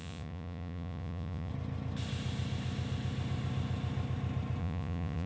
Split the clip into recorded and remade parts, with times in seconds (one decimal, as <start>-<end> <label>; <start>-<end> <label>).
0.0-1.5 remade; 1.5-4.6 recorded; 4.6-5.3 remade